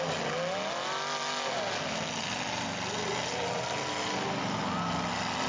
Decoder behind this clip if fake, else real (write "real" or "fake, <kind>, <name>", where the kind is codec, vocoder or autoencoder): real